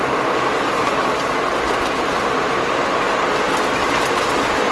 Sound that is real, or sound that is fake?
real